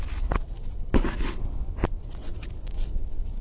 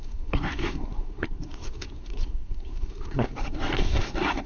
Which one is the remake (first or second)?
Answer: second